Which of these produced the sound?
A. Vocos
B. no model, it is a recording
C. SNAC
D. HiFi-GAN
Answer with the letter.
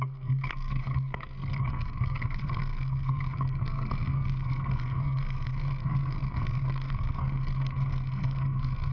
C